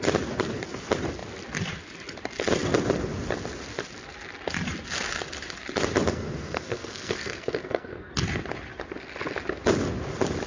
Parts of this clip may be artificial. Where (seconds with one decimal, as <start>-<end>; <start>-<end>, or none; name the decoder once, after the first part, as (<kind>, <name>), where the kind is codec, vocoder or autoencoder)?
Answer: 6.1-8.1 (codec, SNAC)